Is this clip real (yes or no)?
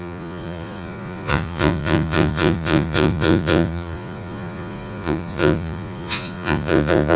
no